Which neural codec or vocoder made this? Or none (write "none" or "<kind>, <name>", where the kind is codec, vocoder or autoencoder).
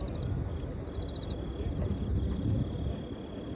none